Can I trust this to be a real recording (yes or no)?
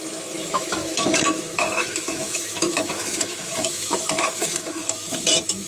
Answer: no